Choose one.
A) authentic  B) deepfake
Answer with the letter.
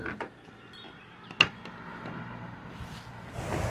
A